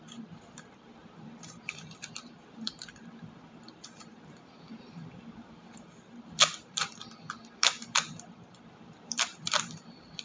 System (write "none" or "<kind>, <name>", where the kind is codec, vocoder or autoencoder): vocoder, BigVGAN v2